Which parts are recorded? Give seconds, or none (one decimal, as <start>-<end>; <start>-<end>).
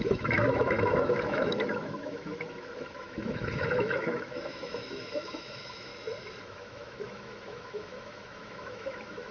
5.9-6.4